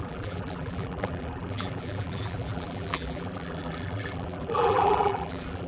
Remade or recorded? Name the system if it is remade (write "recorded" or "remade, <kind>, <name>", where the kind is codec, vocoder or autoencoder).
remade, vocoder, BigVGAN v2